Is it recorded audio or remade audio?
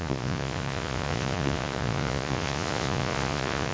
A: remade